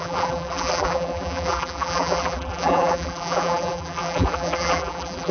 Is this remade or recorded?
remade